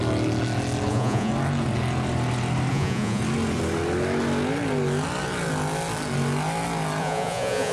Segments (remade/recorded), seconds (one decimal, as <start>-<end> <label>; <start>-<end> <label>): 0.0-0.9 recorded; 0.9-1.3 remade; 1.3-2.7 recorded; 2.7-3.2 remade; 3.2-7.0 recorded; 7.0-7.7 remade